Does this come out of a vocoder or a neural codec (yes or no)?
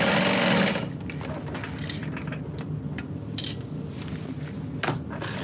no